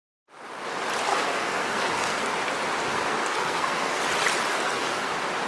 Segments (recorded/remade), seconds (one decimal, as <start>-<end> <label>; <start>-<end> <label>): 0.0-1.1 recorded; 1.1-2.3 remade; 2.3-2.9 recorded; 2.9-4.0 remade; 4.0-4.5 recorded; 4.5-5.1 remade; 5.1-5.5 recorded